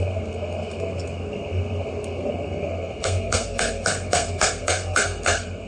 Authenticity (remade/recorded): remade